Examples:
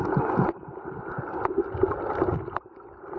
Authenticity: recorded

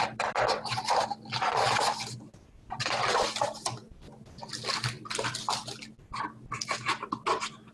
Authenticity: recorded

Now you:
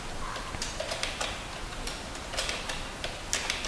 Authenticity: recorded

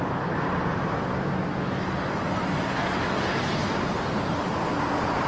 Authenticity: recorded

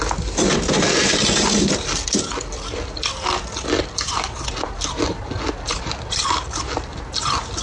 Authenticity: recorded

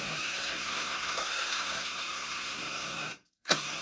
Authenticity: remade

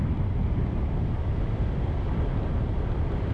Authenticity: remade